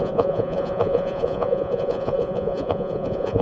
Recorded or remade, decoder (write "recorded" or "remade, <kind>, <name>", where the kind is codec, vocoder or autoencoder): remade, vocoder, Vocos